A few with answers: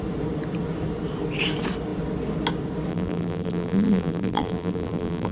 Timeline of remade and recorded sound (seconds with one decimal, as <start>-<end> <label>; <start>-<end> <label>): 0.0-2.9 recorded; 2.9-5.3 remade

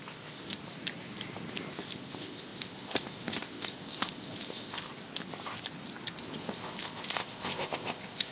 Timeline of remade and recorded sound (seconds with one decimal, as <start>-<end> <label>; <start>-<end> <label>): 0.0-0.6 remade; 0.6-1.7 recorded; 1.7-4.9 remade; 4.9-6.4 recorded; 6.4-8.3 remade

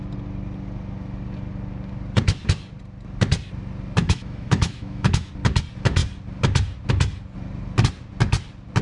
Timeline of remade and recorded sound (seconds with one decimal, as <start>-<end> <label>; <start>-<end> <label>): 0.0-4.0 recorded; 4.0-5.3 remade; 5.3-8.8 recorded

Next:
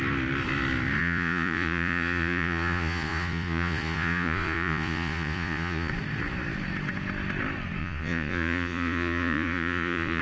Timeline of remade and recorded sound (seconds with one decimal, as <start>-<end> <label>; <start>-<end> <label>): 0.0-1.0 recorded; 1.0-5.9 remade; 5.9-7.8 recorded; 7.8-10.2 remade

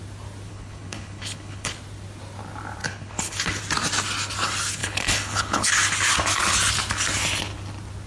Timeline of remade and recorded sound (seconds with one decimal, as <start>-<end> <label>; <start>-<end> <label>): 0.0-0.5 recorded; 0.5-1.7 remade; 1.7-2.8 recorded; 2.8-3.6 remade; 3.6-4.8 recorded; 4.8-5.7 remade; 5.7-8.1 recorded